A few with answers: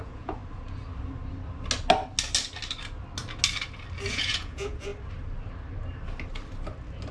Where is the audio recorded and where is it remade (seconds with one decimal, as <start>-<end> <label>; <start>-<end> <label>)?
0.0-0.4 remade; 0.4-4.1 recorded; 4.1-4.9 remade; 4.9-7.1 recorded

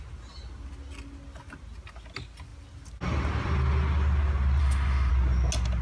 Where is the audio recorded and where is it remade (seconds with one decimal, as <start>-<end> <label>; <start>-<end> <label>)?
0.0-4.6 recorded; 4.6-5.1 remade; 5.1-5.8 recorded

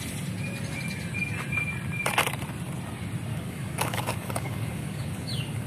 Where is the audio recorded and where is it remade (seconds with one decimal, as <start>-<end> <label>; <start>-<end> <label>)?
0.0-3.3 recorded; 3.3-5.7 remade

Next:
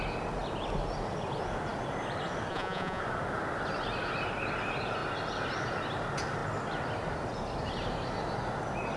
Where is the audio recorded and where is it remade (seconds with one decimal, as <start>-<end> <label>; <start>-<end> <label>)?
0.0-2.5 recorded; 2.5-3.0 remade; 3.0-9.0 recorded